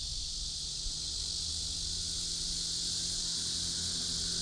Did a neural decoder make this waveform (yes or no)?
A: no